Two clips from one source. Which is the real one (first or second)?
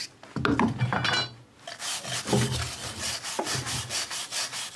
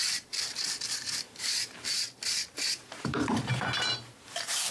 first